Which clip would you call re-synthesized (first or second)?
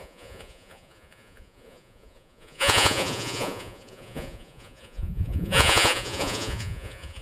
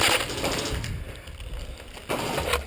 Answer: first